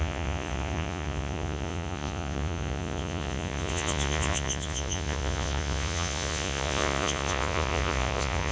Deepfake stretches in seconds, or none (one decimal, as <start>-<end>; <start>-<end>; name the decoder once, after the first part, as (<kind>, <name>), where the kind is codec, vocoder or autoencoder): 0.0-8.5 (vocoder, Vocos)